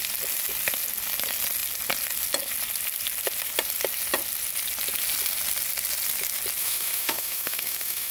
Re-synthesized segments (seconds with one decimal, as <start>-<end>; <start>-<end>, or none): 6.6-8.1